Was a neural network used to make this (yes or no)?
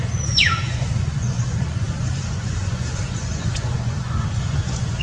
yes